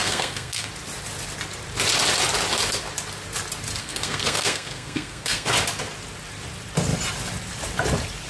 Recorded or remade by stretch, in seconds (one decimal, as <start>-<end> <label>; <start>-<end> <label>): 0.0-0.7 remade; 0.7-3.8 recorded; 3.8-5.5 remade; 5.5-8.3 recorded